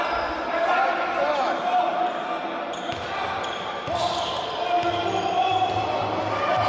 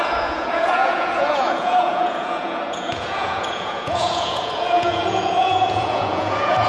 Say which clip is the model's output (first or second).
second